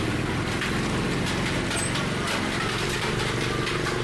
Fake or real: real